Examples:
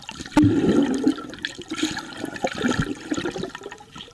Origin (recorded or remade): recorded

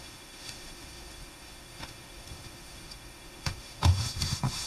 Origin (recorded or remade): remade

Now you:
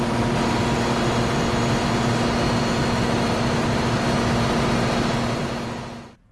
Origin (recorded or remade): recorded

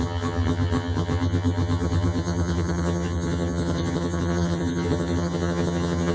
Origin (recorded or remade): remade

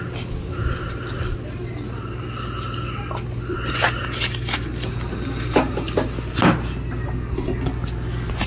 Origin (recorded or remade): recorded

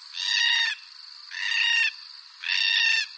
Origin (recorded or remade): recorded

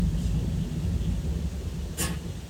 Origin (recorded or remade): recorded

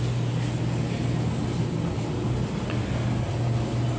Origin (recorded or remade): recorded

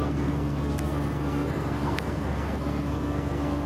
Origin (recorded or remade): remade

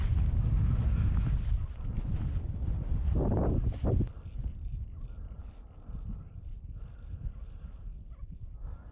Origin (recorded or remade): recorded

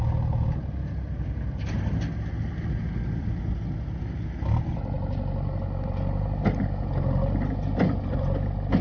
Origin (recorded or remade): recorded